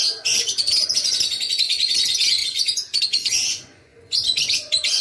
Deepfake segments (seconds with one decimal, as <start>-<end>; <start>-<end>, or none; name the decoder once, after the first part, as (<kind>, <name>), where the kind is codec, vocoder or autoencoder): 0.0-5.0 (vocoder, Vocos)